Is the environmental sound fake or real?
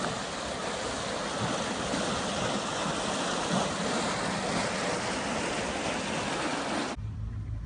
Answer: real